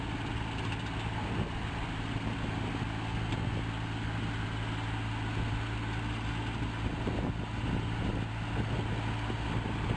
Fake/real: real